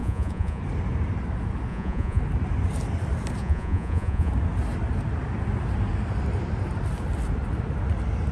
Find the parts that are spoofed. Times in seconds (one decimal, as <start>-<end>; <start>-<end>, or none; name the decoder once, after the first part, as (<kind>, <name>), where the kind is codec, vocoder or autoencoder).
0.0-0.6 (vocoder, Vocos); 1.7-2.2; 3.4-4.3

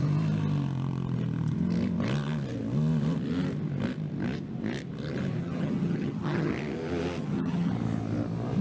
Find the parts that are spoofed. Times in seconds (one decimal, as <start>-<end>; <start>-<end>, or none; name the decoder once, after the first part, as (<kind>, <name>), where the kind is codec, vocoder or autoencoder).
5.4-6.5 (vocoder, HiFi-GAN); 7.2-7.7